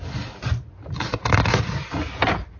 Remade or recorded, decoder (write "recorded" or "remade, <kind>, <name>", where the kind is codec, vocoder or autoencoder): recorded